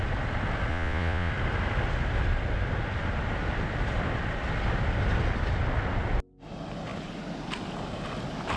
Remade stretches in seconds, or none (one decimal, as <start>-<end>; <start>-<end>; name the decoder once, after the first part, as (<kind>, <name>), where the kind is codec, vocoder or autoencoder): 0.7-1.3 (vocoder, Vocos)